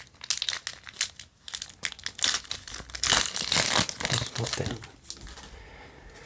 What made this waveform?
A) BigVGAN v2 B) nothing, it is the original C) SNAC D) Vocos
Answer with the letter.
B